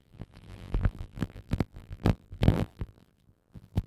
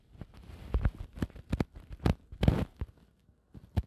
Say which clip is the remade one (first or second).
first